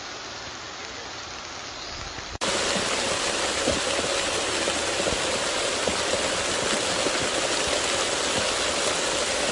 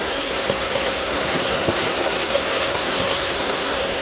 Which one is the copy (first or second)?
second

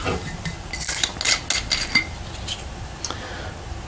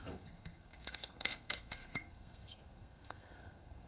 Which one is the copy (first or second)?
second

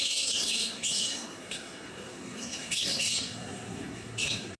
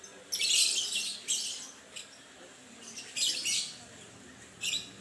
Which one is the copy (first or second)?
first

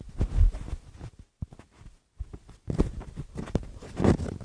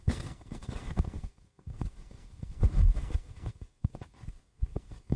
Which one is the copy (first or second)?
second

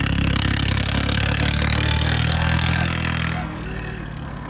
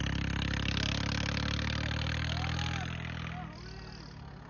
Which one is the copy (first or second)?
first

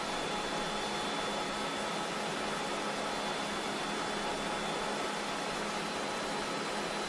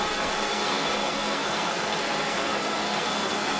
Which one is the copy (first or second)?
second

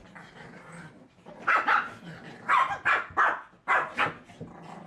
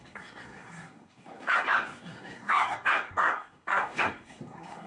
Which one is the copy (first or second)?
second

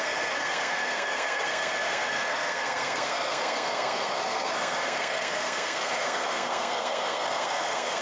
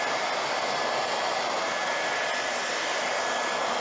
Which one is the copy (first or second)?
first